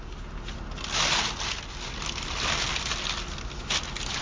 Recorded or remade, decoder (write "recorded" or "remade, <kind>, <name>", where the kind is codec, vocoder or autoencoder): recorded